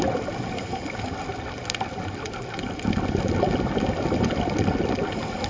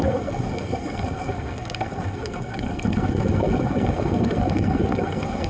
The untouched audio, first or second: first